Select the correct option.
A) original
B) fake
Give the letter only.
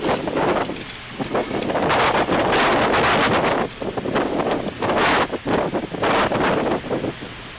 A